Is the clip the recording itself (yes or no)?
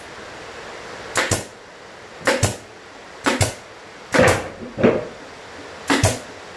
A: yes